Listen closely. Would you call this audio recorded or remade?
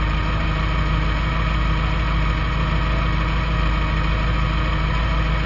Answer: recorded